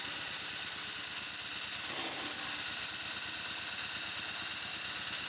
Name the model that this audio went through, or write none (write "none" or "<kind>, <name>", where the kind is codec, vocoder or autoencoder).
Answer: none